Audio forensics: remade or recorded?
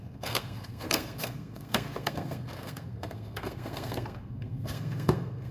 remade